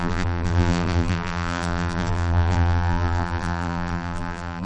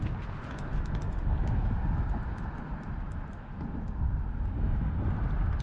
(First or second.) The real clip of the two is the second